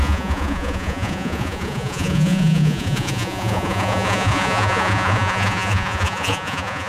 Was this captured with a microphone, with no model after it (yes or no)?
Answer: no